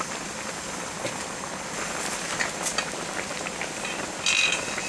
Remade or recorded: recorded